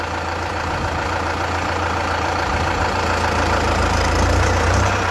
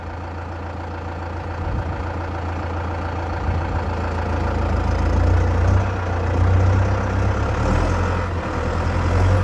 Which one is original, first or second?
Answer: second